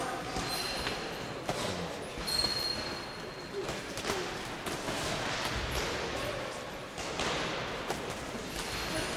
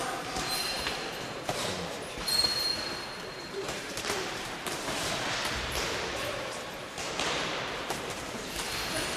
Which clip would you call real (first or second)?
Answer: first